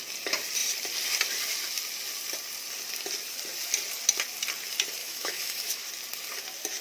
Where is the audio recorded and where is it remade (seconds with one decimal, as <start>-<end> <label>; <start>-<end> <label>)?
0.0-5.0 recorded; 5.0-5.9 remade; 5.9-6.8 recorded